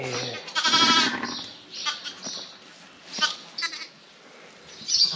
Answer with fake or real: real